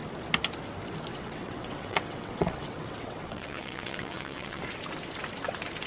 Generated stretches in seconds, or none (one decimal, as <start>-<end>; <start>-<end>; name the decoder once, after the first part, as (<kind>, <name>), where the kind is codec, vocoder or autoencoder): 1.1-4.6 (vocoder, WaveNeXt)